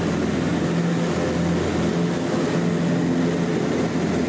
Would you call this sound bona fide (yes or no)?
yes